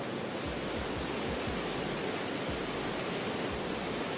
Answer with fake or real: real